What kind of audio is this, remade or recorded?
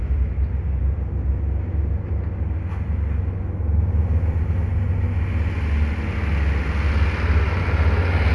recorded